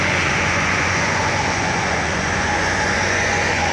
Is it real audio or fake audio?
fake